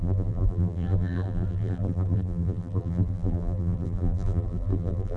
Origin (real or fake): fake